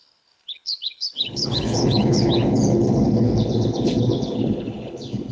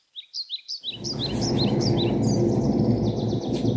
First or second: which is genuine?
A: second